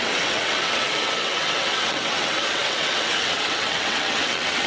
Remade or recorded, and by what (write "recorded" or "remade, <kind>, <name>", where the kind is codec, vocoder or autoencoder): remade, vocoder, WaveNeXt